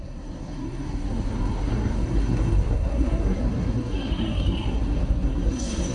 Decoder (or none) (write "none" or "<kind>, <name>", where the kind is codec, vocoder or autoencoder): codec, SNAC